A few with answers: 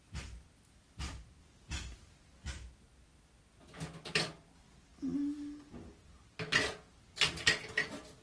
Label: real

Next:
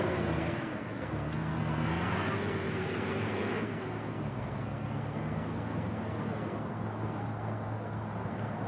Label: fake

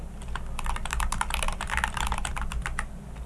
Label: real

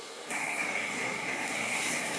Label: fake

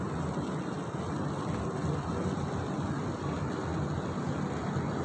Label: real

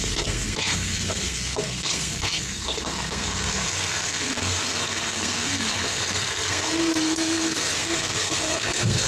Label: fake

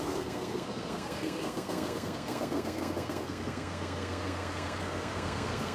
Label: fake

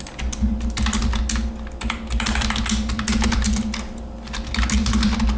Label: real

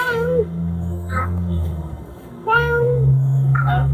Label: fake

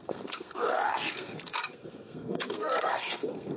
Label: fake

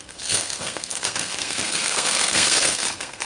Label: fake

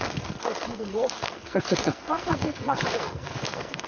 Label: fake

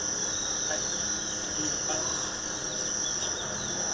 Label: real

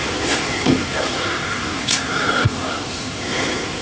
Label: fake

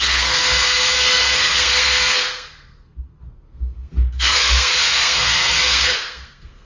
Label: fake